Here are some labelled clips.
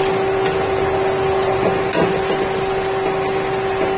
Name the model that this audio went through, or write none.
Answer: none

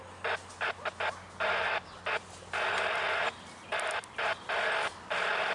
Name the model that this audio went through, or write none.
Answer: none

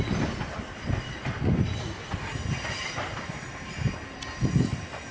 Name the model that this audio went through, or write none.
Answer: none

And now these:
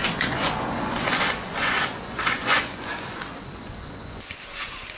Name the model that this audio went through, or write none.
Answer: vocoder, Vocos